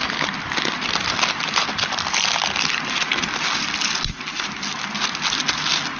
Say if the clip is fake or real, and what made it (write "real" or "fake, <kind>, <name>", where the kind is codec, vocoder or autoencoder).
real